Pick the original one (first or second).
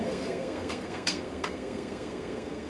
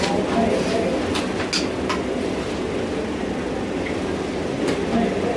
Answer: second